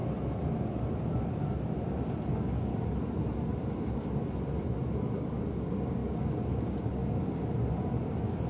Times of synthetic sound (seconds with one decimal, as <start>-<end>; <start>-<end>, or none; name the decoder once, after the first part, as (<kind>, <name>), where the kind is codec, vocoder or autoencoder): 2.3-2.7 (codec, DAC); 5.1-8.5